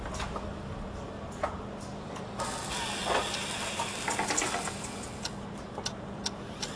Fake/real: real